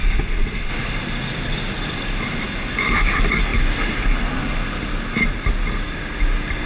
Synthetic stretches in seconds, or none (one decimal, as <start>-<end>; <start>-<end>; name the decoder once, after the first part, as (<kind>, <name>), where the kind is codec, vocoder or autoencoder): 0.0-0.7 (vocoder, Vocos)

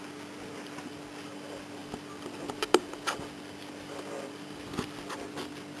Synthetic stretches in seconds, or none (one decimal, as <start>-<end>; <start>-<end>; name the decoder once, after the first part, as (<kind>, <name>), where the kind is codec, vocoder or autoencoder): none

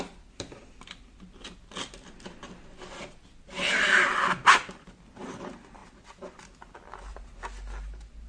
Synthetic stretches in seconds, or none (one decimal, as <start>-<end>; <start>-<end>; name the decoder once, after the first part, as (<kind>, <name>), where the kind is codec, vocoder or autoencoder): none

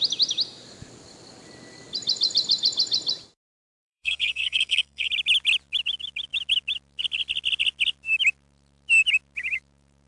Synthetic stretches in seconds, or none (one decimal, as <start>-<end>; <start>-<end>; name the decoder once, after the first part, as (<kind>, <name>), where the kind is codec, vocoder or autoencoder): 3.6-5.1 (codec, SNAC)

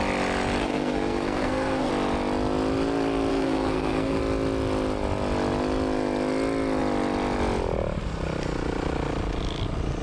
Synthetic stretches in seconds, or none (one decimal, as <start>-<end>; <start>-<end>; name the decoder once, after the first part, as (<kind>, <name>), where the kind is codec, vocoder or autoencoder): 0.6-1.9 (codec, SNAC); 3.3-4.2

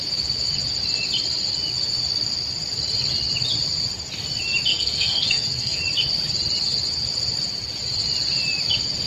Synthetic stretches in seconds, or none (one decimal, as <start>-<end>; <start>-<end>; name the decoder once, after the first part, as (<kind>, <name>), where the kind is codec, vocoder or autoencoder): 4.7-5.8 (codec, SNAC)

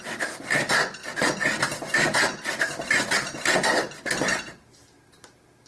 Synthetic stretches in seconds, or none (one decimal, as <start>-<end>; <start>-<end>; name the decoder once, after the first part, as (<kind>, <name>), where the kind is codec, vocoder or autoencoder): none

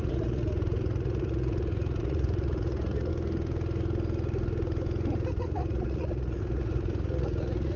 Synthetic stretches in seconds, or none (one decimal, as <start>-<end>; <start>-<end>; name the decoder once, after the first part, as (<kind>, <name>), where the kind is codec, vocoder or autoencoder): 0.0-3.1 (vocoder, Vocos); 5.3-7.8